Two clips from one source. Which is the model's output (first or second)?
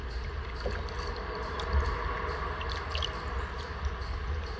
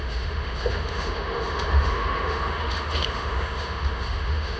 second